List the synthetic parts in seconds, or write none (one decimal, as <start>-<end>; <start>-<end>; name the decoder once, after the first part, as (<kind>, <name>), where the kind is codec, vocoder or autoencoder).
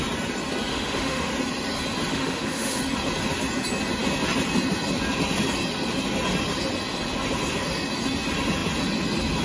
0.7-1.3 (autoencoder, DAC-VAE); 2.1-2.8